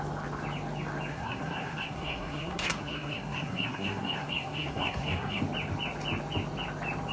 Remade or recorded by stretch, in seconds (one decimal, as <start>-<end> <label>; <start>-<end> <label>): 0.0-1.1 recorded; 1.1-5.4 remade; 5.4-7.1 recorded